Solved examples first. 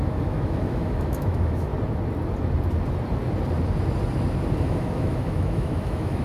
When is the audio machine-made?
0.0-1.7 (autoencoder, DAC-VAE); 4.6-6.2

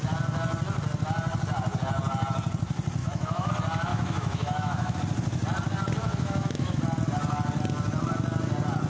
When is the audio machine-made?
3.0-3.5 (autoencoder, DAC-VAE); 3.9-5.0; 6.0-6.8

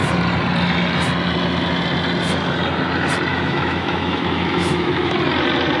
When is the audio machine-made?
3.3-5.1 (autoencoder, DAC-VAE)

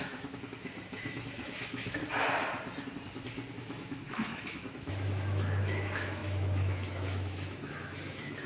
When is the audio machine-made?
0.0-2.0 (autoencoder, DAC-VAE); 3.5-8.5